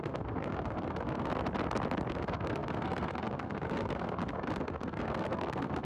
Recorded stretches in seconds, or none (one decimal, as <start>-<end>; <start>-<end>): 1.3-2.1